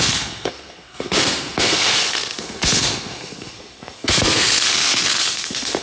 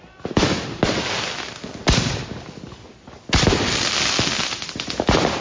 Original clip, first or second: second